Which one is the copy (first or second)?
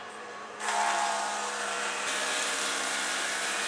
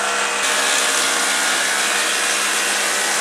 first